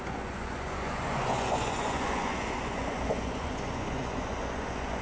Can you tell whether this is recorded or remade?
remade